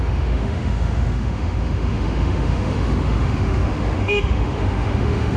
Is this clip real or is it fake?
fake